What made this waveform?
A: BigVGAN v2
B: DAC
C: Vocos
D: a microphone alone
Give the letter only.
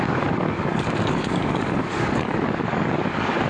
B